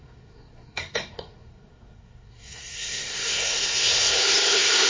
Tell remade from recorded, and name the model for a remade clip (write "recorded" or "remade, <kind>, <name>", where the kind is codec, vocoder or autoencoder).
remade, codec, SNAC